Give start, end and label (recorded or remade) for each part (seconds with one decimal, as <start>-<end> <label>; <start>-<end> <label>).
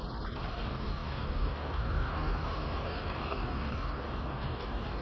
0.0-0.5 recorded; 0.5-5.0 remade